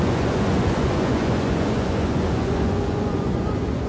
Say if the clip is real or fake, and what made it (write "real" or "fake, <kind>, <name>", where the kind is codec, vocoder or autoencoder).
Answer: fake, vocoder, Vocos